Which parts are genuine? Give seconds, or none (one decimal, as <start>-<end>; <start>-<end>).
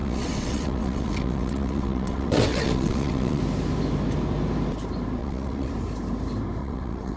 3.4-5.2; 5.7-6.6